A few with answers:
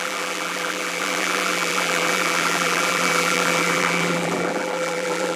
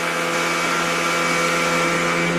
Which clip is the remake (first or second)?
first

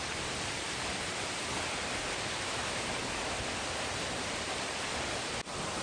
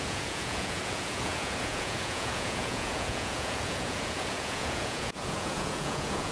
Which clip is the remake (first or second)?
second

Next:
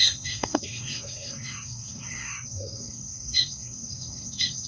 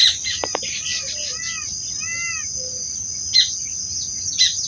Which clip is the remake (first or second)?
first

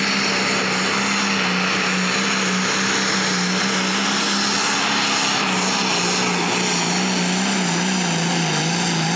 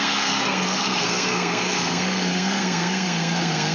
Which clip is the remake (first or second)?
second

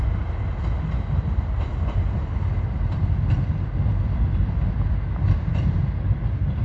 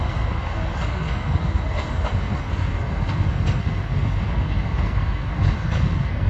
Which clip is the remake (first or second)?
second